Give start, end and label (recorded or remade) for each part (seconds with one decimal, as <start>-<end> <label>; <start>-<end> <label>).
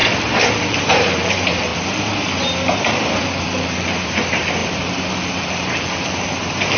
0.0-0.5 recorded; 0.5-1.7 remade; 1.7-3.2 recorded; 3.2-4.6 remade; 4.6-5.1 recorded; 5.1-6.8 remade